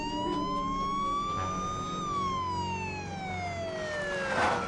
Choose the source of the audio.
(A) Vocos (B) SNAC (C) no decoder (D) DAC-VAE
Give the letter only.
C